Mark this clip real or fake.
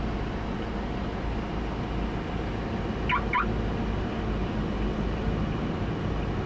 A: real